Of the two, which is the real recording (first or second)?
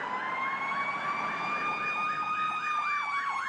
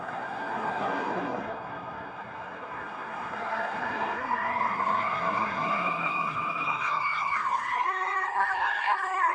first